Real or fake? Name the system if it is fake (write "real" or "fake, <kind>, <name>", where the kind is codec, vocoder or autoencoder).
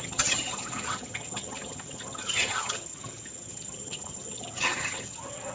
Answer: fake, vocoder, HiFi-GAN